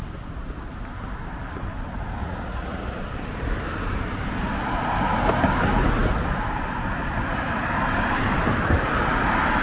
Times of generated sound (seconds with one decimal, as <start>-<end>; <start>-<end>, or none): 2.2-3.0